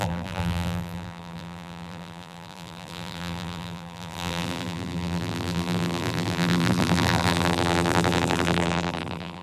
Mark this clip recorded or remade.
remade